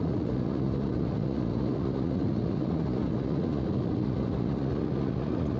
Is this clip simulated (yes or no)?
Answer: yes